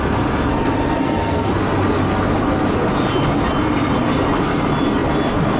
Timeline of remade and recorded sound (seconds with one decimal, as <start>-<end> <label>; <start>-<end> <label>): 0.0-1.0 recorded; 1.0-1.5 remade; 1.5-5.6 recorded